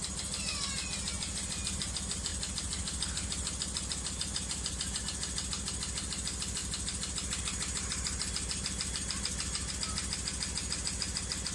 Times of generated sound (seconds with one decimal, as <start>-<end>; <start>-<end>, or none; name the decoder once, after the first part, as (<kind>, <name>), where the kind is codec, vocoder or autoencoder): none